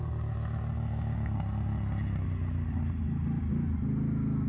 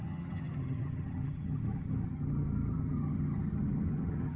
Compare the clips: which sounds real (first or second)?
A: first